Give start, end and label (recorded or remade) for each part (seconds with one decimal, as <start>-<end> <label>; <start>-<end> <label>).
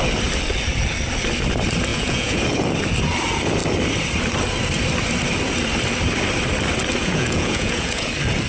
0.0-1.9 recorded; 1.9-2.4 remade; 2.4-7.0 recorded; 7.0-8.1 remade; 8.1-8.5 recorded